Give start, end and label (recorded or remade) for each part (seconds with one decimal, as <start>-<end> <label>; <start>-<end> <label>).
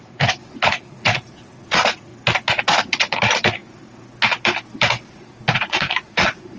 0.0-2.1 remade; 2.1-2.8 recorded; 2.8-3.6 remade; 3.6-5.5 recorded; 5.5-6.6 remade